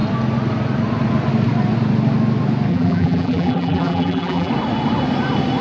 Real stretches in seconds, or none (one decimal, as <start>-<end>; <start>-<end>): 0.0-2.7; 4.5-5.6

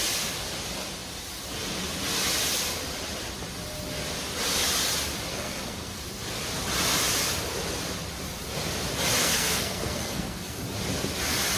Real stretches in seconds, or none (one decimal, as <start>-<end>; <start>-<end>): 0.0-5.3; 6.0-9.2; 10.6-11.6

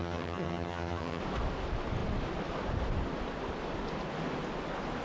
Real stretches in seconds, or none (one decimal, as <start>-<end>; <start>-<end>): 1.2-5.0

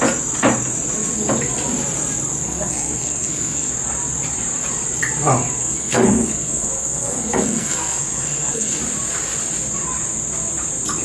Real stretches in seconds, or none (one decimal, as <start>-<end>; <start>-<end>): 0.0-2.4; 3.7-5.6; 8.8-11.0

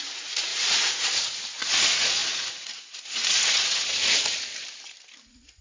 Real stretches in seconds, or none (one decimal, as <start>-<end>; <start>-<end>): 4.5-5.1

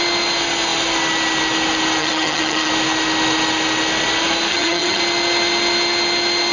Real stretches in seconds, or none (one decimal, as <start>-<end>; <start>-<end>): 0.0-2.0; 2.7-4.5; 5.0-6.5

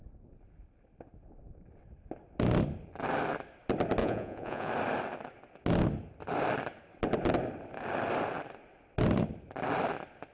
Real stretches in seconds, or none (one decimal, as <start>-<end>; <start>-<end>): 0.0-4.0; 4.7-10.3